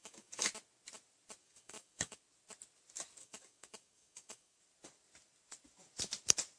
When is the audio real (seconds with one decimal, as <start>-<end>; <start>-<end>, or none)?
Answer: 0.5-1.4; 2.2-3.2; 4.6-6.6